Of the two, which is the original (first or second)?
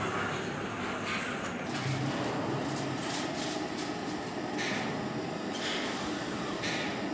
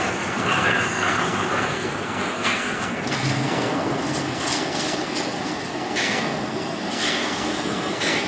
first